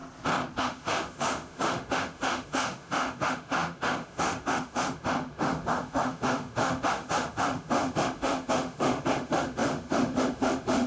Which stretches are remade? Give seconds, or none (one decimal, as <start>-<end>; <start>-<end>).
0.6-10.9